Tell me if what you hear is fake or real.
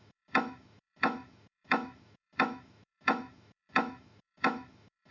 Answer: fake